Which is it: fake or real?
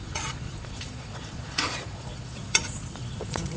fake